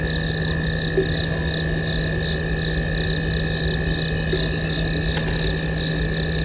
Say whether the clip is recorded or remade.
recorded